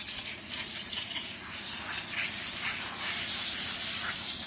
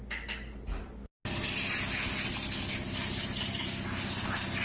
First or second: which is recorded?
second